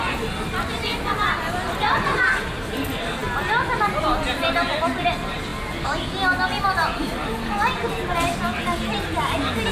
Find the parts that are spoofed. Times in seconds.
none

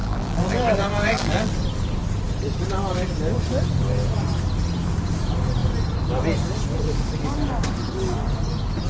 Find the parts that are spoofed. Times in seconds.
0.0-1.5 (vocoder, BigVGAN v2)

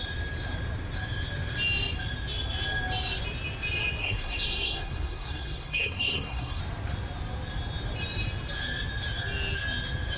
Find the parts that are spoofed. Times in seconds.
4.0-6.6 (codec, SNAC)

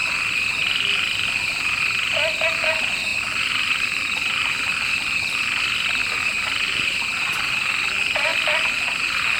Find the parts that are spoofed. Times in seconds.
3.1-4.8 (vocoder, BigVGAN v2); 6.0-7.9